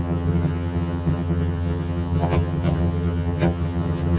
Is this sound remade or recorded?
remade